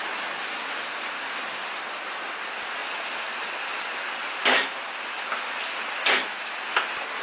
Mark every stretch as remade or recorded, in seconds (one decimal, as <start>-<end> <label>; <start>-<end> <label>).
0.0-7.2 recorded